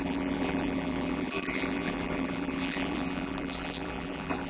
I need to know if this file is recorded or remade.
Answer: remade